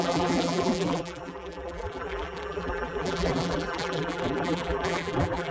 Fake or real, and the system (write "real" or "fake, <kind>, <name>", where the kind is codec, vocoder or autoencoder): fake, vocoder, BigVGAN v2